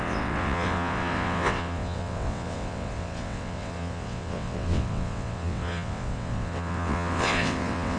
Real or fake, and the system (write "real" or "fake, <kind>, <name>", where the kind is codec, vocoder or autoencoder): fake, vocoder, WaveNeXt